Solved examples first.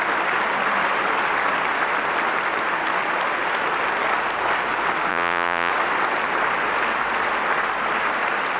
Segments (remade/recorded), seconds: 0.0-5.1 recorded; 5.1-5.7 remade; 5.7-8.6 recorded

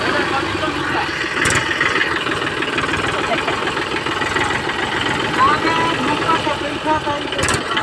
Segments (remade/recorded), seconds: 0.0-7.8 recorded

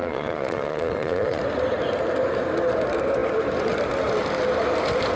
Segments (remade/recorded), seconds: 0.0-1.4 remade; 1.4-5.2 recorded

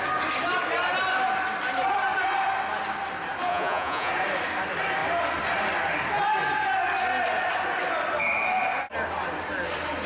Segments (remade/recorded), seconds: 0.0-3.5 recorded; 3.5-4.1 remade; 4.1-10.1 recorded

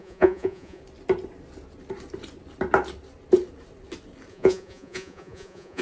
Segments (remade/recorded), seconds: 0.0-0.8 remade; 0.8-4.3 recorded; 4.3-5.8 remade